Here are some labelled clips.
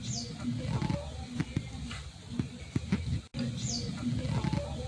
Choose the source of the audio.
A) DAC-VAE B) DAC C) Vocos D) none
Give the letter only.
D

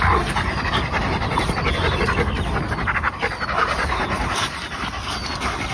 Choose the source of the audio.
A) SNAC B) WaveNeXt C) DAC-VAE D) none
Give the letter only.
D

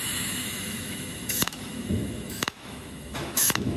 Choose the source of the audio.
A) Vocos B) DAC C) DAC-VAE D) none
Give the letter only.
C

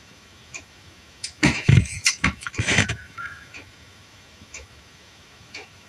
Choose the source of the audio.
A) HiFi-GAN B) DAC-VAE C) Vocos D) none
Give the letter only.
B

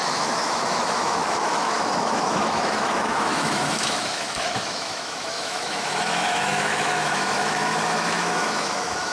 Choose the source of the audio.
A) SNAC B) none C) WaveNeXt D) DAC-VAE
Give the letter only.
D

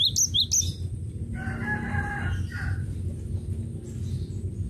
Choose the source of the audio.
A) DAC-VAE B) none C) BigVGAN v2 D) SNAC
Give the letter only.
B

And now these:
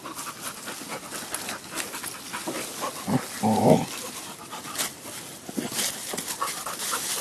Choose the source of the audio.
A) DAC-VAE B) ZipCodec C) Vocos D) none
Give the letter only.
D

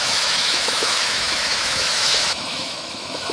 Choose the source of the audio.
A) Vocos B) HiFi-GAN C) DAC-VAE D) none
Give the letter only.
C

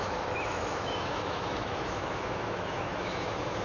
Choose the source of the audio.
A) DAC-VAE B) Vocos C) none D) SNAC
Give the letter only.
A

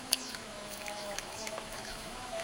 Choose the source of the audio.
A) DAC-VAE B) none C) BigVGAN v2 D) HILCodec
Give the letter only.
A